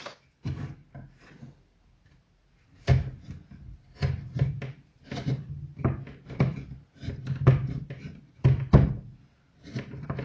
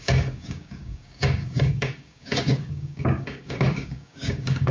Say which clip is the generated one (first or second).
second